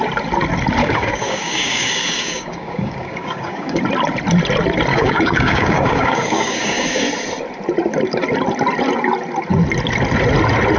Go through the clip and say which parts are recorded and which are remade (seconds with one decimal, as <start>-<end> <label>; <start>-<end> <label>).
0.0-0.8 recorded; 0.8-3.8 remade; 3.8-4.9 recorded; 4.9-7.0 remade; 7.0-10.8 recorded